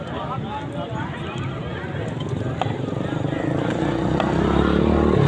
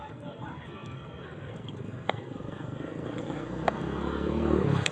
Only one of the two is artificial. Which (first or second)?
second